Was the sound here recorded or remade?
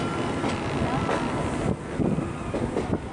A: recorded